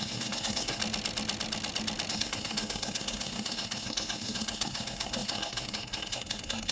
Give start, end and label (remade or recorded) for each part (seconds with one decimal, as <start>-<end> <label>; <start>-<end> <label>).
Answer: 0.0-0.8 remade; 0.8-2.1 recorded; 2.1-6.7 remade